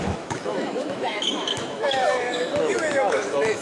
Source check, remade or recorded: remade